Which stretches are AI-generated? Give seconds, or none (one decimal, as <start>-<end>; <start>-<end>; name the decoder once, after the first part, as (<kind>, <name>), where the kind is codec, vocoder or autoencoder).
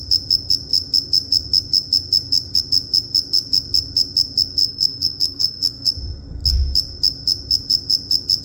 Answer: 4.6-5.9 (codec, SNAC)